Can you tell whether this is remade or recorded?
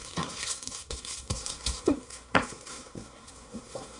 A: remade